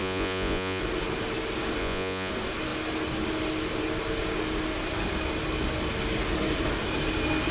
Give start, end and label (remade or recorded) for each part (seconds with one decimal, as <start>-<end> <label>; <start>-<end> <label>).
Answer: 0.0-0.8 remade; 0.8-1.8 recorded; 1.8-2.3 remade; 2.3-7.5 recorded